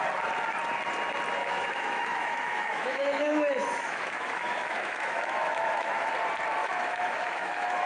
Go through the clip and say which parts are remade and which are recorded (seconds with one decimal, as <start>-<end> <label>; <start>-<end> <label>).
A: 0.0-1.4 recorded; 1.4-6.1 remade; 6.1-6.6 recorded; 6.6-7.9 remade